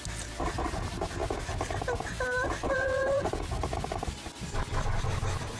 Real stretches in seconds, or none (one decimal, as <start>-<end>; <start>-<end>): 0.0-2.6; 3.3-5.6